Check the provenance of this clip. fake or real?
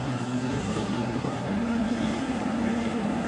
fake